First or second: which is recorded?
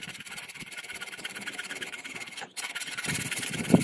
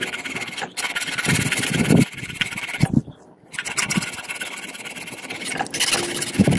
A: second